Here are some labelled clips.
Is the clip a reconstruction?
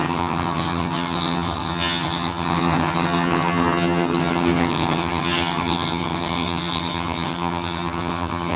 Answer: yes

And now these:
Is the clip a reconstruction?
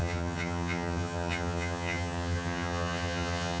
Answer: yes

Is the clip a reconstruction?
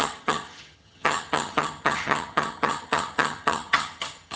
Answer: yes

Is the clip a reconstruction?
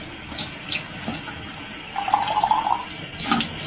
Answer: no